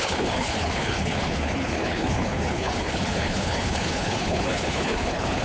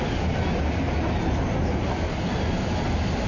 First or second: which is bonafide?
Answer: second